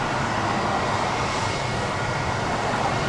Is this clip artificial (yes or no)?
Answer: no